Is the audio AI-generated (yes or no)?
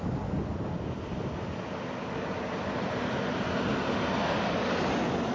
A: no